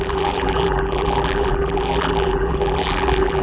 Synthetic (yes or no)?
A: yes